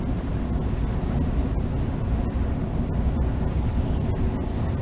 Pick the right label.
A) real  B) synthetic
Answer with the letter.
A